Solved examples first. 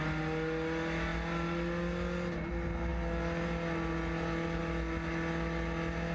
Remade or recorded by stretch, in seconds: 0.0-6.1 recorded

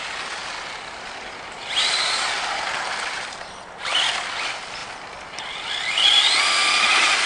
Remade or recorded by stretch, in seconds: 0.0-7.3 recorded

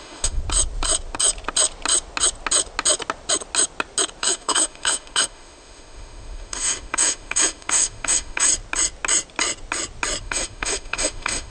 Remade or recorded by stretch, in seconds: 0.0-0.4 remade; 0.4-4.2 recorded; 4.2-8.5 remade; 8.5-10.2 recorded; 10.2-11.5 remade

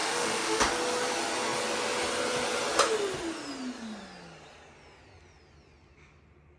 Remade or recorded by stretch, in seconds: 0.0-0.6 remade; 0.6-6.6 recorded